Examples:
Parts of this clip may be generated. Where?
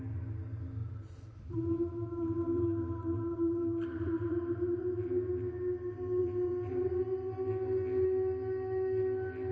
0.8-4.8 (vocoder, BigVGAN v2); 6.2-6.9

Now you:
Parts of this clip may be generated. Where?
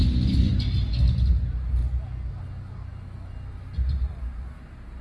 none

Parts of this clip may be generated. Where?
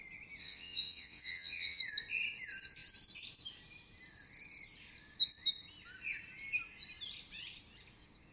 0.4-1.8 (vocoder, WaveNeXt)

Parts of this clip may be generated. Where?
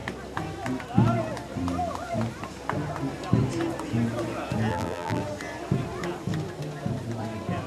4.7-5.2 (vocoder, BigVGAN v2)